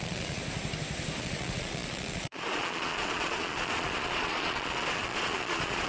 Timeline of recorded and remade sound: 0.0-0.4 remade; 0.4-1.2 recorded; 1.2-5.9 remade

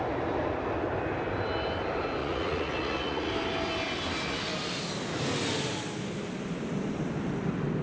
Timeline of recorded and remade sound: 0.0-2.2 recorded; 2.2-3.3 remade; 3.3-7.8 recorded

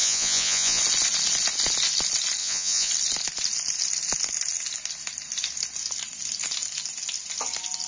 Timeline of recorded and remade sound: 0.0-0.8 remade; 0.8-2.4 recorded; 2.4-2.9 remade; 2.9-7.9 recorded

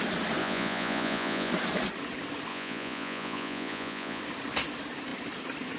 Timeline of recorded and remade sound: 0.0-0.4 recorded; 0.4-1.5 remade; 1.5-2.5 recorded; 2.5-4.2 remade; 4.2-5.8 recorded

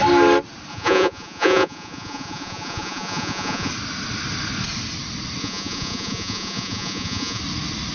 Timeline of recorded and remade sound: 0.0-0.7 recorded; 0.7-3.7 remade; 3.7-5.4 recorded; 5.4-7.4 remade; 7.4-7.9 recorded

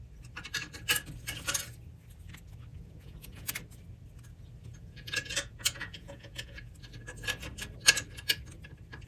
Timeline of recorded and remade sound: 0.0-2.7 recorded; 2.7-3.5 remade; 3.5-4.6 recorded; 4.6-6.7 remade; 6.7-9.1 recorded

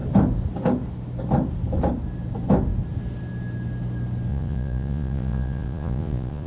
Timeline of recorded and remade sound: 0.0-4.3 recorded; 4.3-6.5 remade